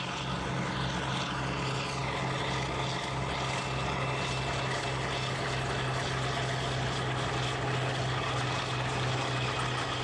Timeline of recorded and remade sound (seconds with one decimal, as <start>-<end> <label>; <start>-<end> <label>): 0.0-10.0 recorded